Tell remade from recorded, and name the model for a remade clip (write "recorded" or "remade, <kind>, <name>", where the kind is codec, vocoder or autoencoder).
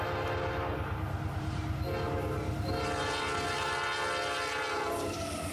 recorded